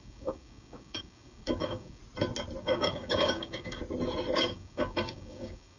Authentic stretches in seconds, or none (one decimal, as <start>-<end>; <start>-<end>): 2.0-2.6; 3.8-4.4